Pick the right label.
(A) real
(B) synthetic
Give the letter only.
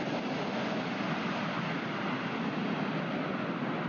A